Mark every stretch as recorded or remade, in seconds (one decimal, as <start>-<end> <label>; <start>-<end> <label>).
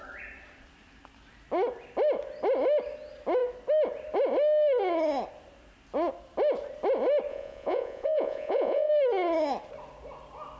0.0-7.3 recorded; 7.3-8.9 remade; 8.9-10.6 recorded